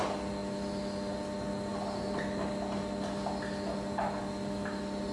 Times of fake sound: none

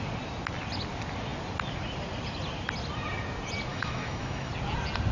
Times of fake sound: 3.7-4.5

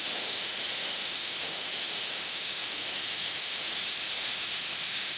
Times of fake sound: 0.0-5.2

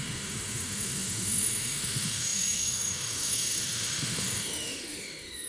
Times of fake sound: 0.0-5.5

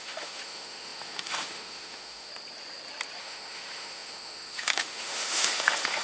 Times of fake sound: 0.0-2.3; 3.2-6.0

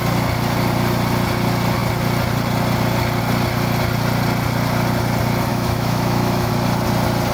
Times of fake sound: 5.5-6.5

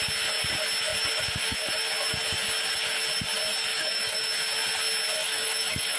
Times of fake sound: 3.7-4.3; 5.2-6.0